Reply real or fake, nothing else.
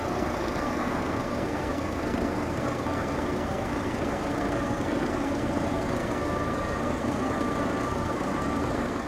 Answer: fake